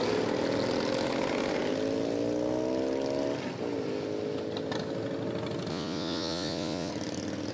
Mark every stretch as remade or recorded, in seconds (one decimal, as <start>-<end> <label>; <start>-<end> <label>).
0.0-5.7 recorded; 5.7-6.9 remade; 6.9-7.5 recorded